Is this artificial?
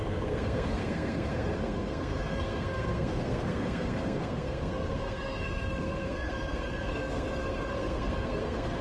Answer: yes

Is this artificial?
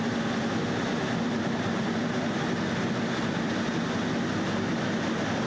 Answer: no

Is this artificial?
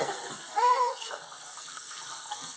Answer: yes